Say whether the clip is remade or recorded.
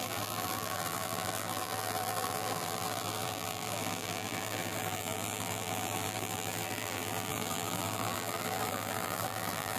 remade